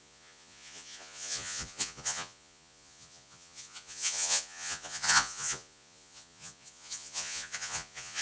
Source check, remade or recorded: remade